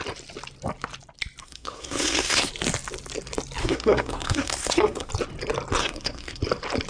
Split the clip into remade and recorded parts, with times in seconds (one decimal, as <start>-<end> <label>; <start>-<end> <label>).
0.0-1.4 recorded; 1.4-2.5 remade; 2.5-3.6 recorded; 3.6-5.1 remade; 5.1-5.8 recorded; 5.8-6.4 remade; 6.4-6.9 recorded